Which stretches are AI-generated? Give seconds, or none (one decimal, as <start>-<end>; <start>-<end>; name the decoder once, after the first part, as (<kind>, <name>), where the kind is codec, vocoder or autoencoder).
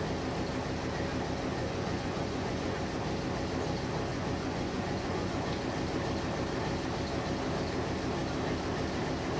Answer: 1.5-2.8 (vocoder, Vocos); 4.1-5.6